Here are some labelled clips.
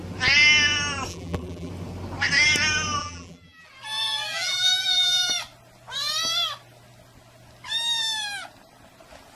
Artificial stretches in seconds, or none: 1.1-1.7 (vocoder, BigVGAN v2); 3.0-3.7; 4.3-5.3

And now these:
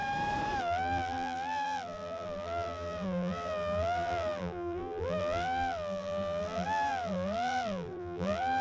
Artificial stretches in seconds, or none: 0.6-8.6 (vocoder, BigVGAN v2)